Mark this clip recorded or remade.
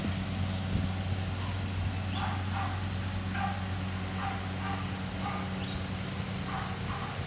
recorded